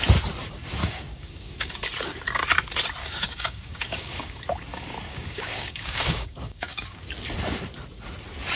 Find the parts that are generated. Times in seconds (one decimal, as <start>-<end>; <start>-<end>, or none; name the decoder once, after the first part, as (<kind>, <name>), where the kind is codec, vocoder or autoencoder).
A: 0.8-1.8 (codec, DAC); 3.0-4.4; 5.1-7.1